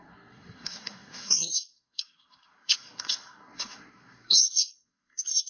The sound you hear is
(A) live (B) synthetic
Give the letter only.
B